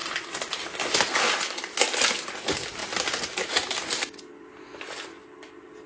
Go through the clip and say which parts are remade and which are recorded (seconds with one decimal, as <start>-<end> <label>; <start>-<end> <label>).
0.0-5.9 recorded